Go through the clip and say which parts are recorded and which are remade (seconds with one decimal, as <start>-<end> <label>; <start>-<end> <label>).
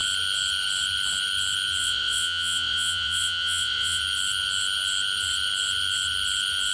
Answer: 0.0-1.8 recorded; 1.8-4.0 remade; 4.0-6.7 recorded